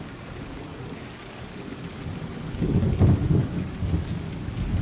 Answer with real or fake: fake